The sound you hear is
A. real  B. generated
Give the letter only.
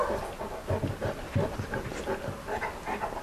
A